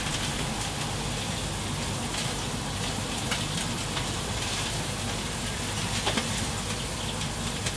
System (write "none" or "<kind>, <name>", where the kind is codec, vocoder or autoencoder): none